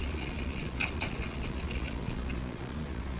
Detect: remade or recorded remade